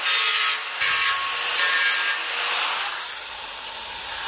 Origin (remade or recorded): recorded